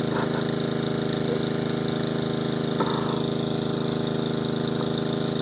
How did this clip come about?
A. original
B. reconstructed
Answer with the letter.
A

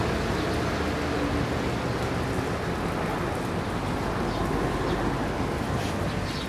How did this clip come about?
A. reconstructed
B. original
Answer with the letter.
B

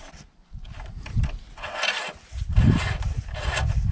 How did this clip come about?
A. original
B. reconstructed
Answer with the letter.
A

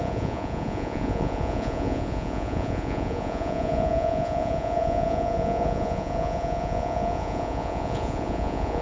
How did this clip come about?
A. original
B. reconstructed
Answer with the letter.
B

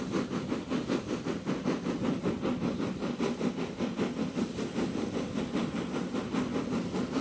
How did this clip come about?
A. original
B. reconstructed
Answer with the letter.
A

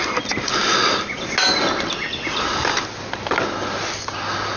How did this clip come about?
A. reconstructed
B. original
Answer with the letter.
B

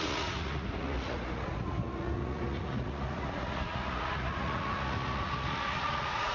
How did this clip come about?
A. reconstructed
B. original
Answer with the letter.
A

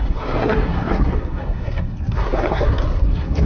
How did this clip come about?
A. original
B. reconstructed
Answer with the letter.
B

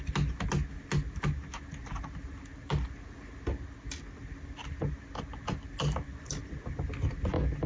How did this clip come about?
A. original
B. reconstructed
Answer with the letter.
A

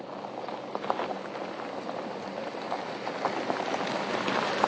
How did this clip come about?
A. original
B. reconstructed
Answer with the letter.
A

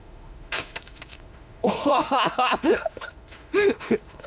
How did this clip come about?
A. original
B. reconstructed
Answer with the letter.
B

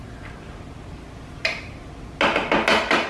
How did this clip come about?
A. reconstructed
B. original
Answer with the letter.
B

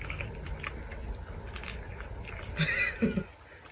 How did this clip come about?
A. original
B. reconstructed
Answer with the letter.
A